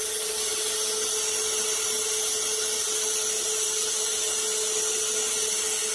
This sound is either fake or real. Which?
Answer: real